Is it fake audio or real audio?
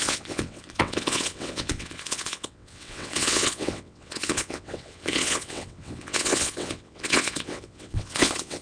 fake